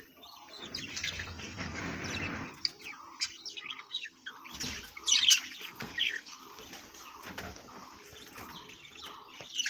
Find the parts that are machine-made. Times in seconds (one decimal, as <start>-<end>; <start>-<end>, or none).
0.9-1.8; 3.5-4.3; 5.6-6.4